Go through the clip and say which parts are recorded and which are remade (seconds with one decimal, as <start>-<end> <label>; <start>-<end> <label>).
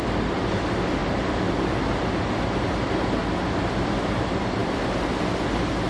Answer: 0.0-1.0 recorded; 1.0-1.6 remade; 1.6-5.9 recorded